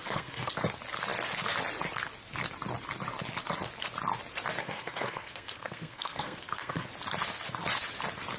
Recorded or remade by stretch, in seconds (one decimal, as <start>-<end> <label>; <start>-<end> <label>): 0.0-0.5 remade; 0.5-4.6 recorded; 4.6-6.9 remade; 6.9-8.4 recorded